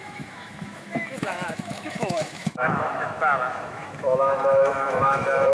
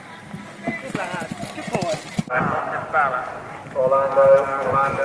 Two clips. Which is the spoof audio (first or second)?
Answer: first